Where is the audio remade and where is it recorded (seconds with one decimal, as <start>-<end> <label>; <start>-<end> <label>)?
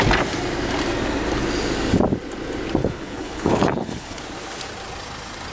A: 0.0-2.8 recorded; 2.8-4.2 remade; 4.2-5.5 recorded